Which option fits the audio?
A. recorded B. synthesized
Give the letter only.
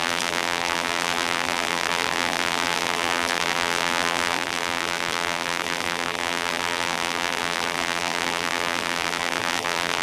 B